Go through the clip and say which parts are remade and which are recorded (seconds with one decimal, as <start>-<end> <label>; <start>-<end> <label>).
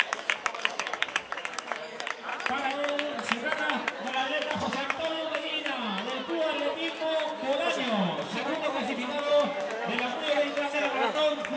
0.0-2.3 remade; 2.3-3.9 recorded; 3.9-5.5 remade; 5.5-9.3 recorded; 9.3-10.1 remade; 10.1-10.8 recorded; 10.8-11.6 remade